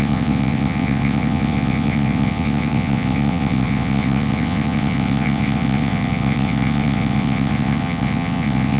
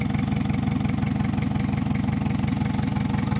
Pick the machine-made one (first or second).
first